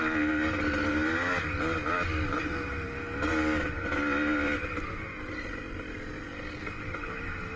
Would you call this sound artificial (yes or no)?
no